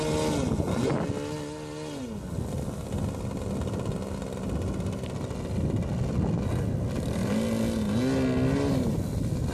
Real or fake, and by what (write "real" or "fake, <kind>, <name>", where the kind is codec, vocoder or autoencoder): real